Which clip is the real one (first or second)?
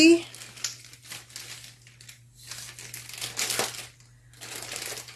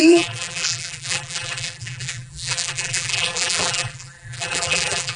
first